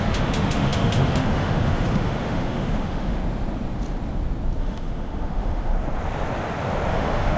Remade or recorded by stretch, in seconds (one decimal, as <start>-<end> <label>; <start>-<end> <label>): 0.0-3.2 remade; 3.2-4.6 recorded; 4.6-5.7 remade; 5.7-6.9 recorded; 6.9-7.4 remade